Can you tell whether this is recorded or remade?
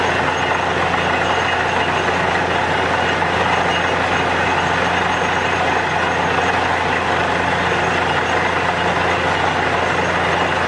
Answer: recorded